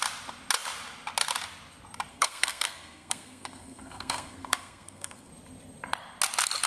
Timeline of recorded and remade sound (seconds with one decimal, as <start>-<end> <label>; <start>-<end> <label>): 0.0-2.1 recorded; 2.1-5.3 remade; 5.3-6.7 recorded